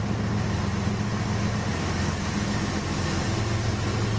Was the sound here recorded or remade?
recorded